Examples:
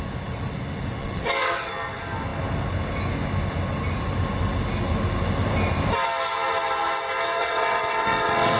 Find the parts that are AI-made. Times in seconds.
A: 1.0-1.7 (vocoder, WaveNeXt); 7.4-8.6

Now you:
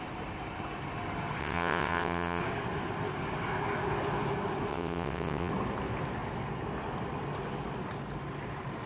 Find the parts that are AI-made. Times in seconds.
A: 1.4-2.4 (vocoder, WaveNeXt); 4.7-5.5

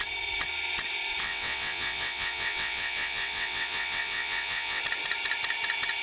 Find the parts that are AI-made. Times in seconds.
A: 1.2-4.8 (vocoder, WaveNeXt)

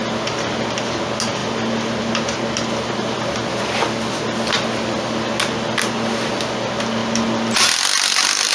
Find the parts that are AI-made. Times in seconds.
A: none

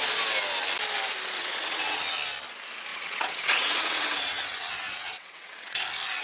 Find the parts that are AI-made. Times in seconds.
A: 1.4-2.0 (vocoder, WaveNeXt); 2.9-5.8

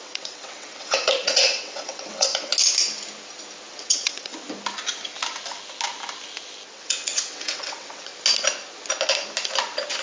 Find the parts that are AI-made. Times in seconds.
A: 0.0-2.5 (vocoder, WaveNeXt); 3.7-4.3; 6.7-8.1

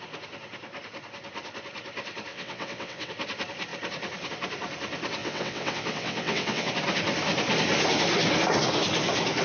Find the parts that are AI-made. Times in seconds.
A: 2.3-3.1 (vocoder, WaveNeXt); 5.2-6.7

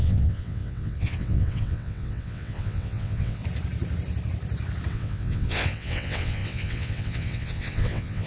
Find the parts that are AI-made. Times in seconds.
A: 0.0-3.4 (vocoder, WaveNeXt); 4.9-8.3